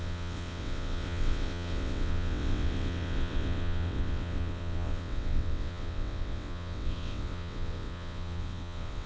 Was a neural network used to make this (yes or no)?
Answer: yes